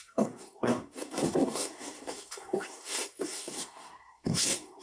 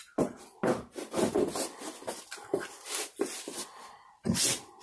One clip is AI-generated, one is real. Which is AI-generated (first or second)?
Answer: first